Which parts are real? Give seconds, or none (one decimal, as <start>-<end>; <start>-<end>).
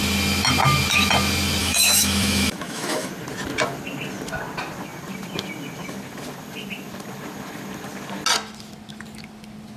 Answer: 0.0-1.6; 3.1-9.8